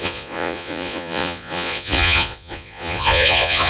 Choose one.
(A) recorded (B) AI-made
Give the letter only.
B